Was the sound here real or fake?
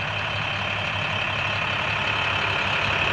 real